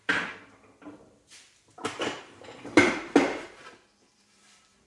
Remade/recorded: remade